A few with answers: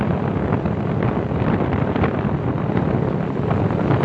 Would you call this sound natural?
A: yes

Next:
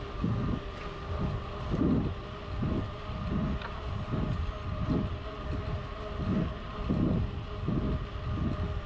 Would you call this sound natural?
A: yes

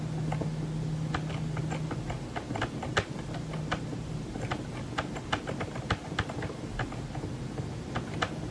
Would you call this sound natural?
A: yes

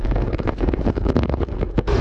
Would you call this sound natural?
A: no